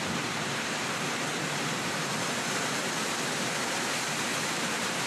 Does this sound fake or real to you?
real